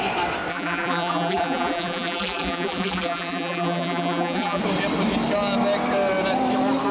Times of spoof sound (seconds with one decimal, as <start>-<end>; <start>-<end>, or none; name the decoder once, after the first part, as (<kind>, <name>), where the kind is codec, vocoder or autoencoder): 0.5-4.6 (vocoder, BigVGAN v2)